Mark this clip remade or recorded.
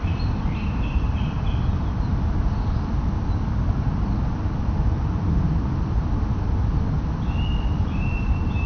recorded